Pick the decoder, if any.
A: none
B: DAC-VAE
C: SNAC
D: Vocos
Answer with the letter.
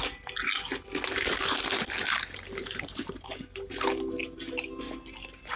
A